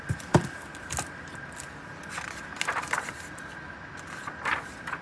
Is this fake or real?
real